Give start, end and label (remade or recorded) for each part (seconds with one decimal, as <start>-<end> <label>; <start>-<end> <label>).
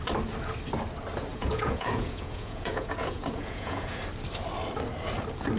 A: 0.0-1.3 recorded; 1.3-4.0 remade; 4.0-5.6 recorded